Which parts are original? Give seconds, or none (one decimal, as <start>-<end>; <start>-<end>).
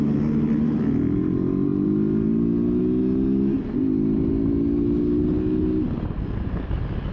0.0-7.1